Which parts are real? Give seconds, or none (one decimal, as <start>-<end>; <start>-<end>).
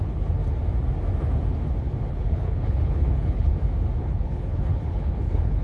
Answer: 0.4-2.1; 3.5-4.0